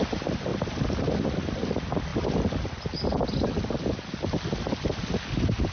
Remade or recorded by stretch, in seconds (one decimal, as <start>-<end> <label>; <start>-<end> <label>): 0.0-5.7 recorded